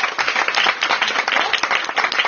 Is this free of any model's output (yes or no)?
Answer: yes